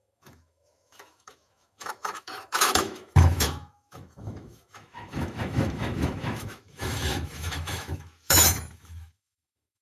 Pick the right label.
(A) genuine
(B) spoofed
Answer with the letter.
B